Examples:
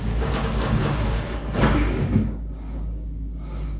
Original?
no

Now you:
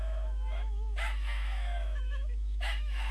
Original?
no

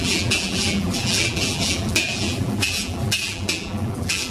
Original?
no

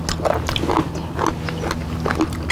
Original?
yes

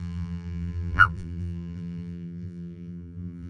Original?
no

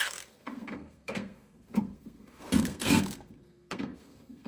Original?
no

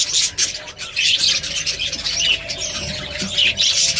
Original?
yes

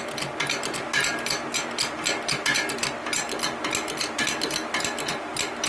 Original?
yes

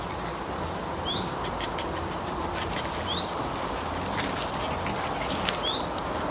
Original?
yes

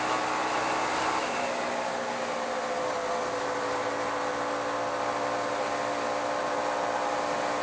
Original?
yes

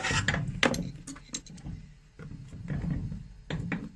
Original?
yes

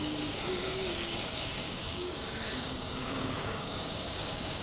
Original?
no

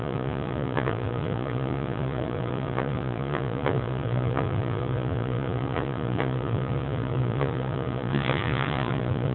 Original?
no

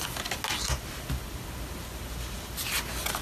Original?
yes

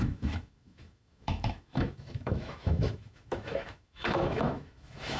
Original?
no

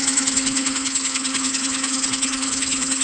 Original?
no